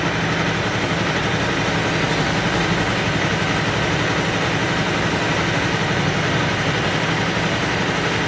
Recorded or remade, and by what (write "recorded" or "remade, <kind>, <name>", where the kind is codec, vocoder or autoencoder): recorded